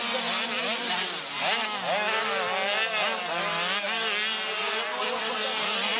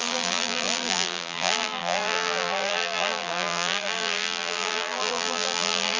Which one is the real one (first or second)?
first